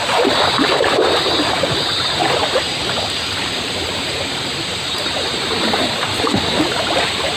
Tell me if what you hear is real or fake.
fake